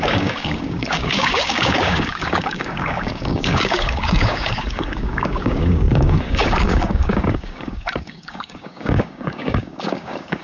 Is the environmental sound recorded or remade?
remade